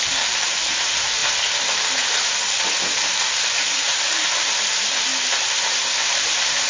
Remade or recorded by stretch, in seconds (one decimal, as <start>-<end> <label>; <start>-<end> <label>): 0.0-1.2 remade; 1.2-3.1 recorded; 3.1-5.1 remade; 5.1-5.9 recorded; 5.9-6.7 remade